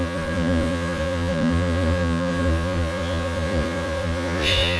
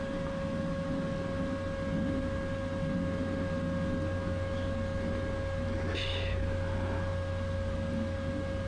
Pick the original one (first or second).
second